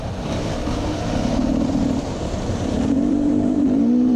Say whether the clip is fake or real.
fake